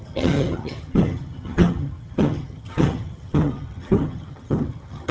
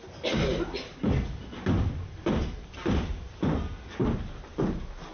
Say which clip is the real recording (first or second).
second